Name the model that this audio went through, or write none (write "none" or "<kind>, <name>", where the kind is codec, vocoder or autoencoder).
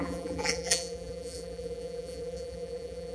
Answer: vocoder, BigVGAN v2